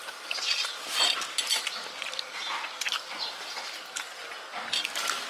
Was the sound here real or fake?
real